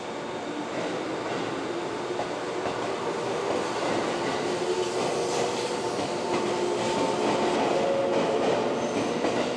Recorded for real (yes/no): yes